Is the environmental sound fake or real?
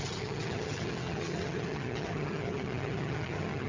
fake